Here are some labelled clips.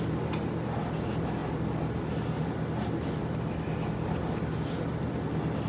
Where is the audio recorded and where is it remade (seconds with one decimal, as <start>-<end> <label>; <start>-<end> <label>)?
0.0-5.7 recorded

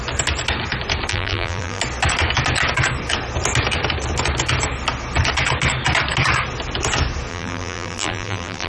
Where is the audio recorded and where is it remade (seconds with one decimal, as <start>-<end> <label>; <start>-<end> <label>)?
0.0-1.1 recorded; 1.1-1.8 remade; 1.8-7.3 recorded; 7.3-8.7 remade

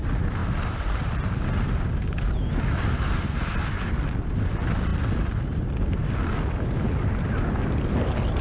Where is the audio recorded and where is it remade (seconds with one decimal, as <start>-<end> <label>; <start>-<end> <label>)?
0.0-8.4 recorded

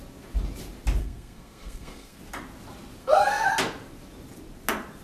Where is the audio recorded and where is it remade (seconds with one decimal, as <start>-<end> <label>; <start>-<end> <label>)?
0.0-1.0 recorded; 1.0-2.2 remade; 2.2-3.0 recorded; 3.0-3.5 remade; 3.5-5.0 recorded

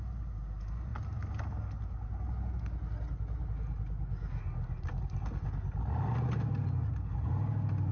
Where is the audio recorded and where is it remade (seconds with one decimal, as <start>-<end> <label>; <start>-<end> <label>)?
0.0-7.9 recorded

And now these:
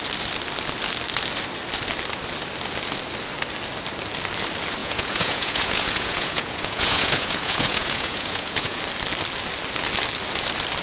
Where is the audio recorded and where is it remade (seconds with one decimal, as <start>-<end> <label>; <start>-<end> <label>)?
0.0-4.8 recorded; 4.8-8.8 remade; 8.8-10.8 recorded